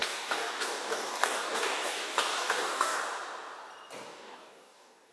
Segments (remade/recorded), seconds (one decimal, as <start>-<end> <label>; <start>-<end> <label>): 0.0-3.0 remade; 3.0-4.1 recorded; 4.1-5.1 remade